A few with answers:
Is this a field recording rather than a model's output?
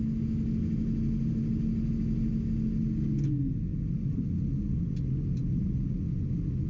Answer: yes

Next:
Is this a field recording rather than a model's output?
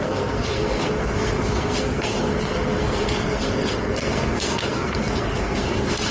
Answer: no